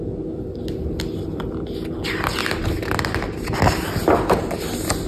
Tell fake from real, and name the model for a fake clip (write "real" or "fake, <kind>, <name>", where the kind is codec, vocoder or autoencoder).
real